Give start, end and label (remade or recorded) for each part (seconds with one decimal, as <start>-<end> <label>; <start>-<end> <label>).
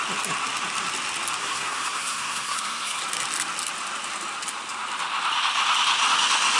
0.0-1.4 recorded; 1.4-3.0 remade; 3.0-6.6 recorded